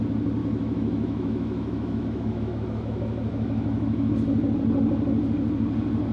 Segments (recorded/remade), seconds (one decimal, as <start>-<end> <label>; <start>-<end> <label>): 0.0-0.4 recorded; 0.4-4.1 remade; 4.1-6.1 recorded